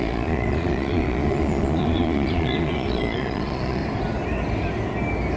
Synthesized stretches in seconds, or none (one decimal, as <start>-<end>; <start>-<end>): 0.0-3.8